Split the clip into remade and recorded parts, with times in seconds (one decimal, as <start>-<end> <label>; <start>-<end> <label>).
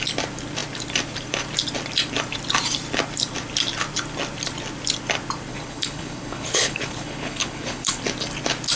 0.0-5.5 recorded; 5.5-8.0 remade; 8.0-8.8 recorded